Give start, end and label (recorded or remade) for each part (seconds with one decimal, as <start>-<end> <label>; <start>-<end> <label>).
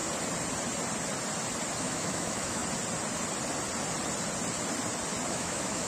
0.0-1.8 recorded; 1.8-2.6 remade; 2.6-5.3 recorded; 5.3-5.9 remade